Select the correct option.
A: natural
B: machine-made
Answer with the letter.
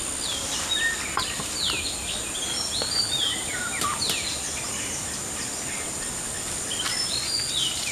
A